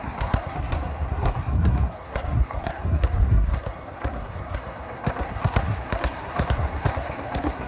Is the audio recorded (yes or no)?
no